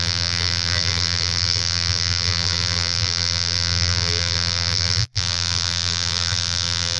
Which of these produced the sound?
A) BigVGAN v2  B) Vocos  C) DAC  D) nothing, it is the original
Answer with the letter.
A